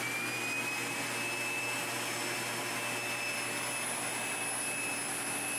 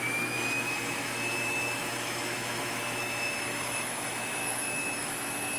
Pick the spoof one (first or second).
second